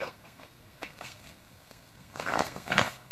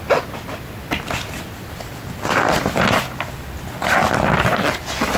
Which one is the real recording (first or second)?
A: second